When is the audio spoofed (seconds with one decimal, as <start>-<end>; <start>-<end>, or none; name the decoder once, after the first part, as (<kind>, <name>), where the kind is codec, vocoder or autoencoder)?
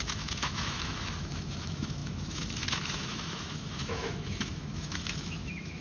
0.0-5.8 (autoencoder, DAC-VAE)